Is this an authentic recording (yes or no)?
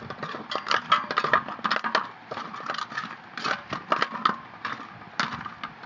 yes